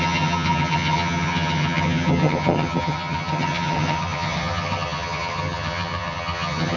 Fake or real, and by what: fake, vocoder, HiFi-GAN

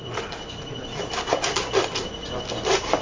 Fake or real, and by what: real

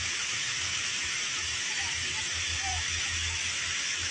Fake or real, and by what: fake, autoencoder, DAC-VAE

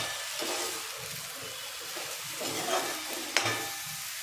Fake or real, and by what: real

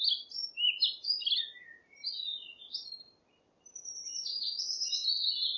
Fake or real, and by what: real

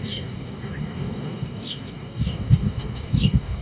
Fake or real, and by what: fake, codec, DAC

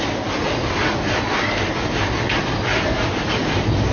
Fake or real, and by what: real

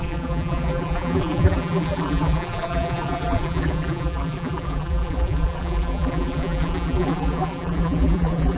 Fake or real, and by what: fake, vocoder, BigVGAN v2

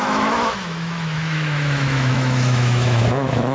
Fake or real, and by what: fake, autoencoder, DAC-VAE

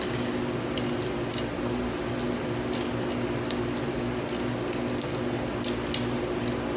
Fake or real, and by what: real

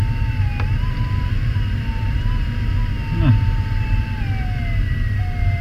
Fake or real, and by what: real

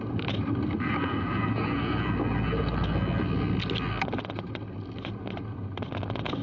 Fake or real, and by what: real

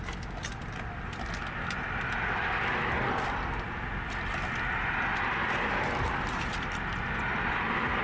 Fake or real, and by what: real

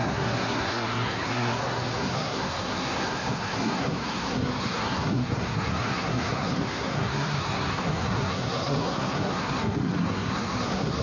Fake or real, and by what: fake, codec, SNAC